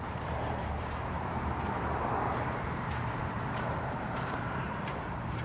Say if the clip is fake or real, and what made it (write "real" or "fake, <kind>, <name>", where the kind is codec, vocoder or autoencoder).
fake, vocoder, BigVGAN v2